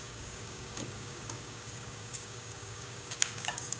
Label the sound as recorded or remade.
remade